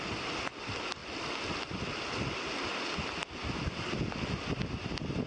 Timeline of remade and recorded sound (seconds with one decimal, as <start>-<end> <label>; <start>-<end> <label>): 0.0-5.3 recorded